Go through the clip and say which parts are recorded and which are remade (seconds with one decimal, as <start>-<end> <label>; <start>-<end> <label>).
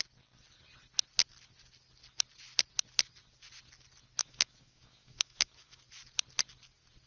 0.0-4.2 recorded; 4.2-5.8 remade; 5.8-7.1 recorded